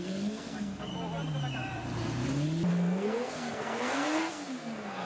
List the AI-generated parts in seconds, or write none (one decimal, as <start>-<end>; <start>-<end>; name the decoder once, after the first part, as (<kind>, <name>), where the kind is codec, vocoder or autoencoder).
0.0-0.9 (codec, SNAC); 2.7-5.1